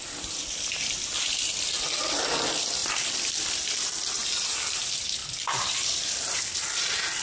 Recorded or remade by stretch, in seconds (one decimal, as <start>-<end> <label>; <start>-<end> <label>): 0.0-0.7 remade; 0.7-2.8 recorded; 2.8-3.5 remade; 3.5-5.2 recorded; 5.2-6.6 remade; 6.6-7.2 recorded